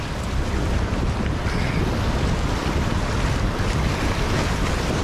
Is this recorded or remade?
remade